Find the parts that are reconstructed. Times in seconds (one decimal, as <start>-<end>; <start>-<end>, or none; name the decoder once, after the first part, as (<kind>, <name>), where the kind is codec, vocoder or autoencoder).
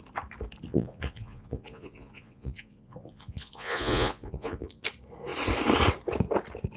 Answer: 0.7-4.8 (vocoder, Vocos)